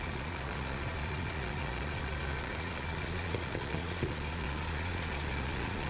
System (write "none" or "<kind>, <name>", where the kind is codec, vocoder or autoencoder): vocoder, Vocos